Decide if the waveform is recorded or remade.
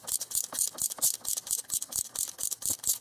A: recorded